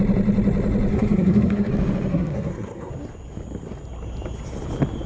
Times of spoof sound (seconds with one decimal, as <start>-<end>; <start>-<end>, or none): 0.9-1.7; 2.1-2.9